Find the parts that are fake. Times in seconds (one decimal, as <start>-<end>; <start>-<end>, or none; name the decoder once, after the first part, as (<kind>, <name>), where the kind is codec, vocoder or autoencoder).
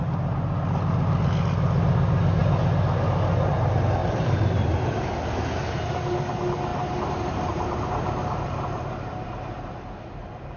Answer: 4.0-5.1 (vocoder, BigVGAN v2); 6.7-9.7